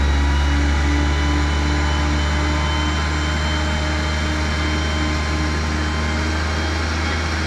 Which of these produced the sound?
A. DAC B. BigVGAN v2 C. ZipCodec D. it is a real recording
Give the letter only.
D